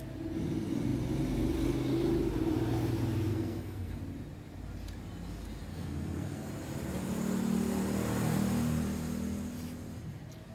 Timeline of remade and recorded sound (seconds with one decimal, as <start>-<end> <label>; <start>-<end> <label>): 0.0-3.3 recorded; 3.3-4.0 remade; 4.0-5.7 recorded; 5.7-6.5 remade; 6.5-10.5 recorded